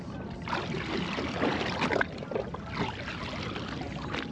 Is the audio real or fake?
real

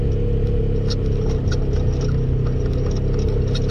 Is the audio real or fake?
real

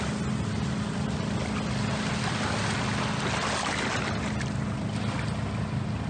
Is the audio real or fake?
real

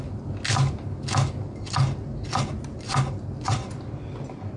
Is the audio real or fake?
real